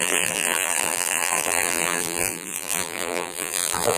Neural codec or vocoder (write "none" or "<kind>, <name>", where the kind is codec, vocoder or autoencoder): vocoder, BigVGAN v2